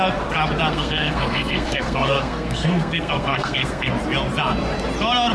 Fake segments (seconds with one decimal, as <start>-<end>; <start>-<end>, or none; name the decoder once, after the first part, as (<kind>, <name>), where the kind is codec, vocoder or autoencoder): 0.7-3.9 (codec, SNAC)